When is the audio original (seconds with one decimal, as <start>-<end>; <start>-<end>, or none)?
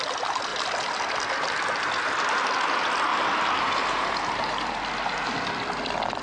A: 0.0-3.1; 4.8-6.2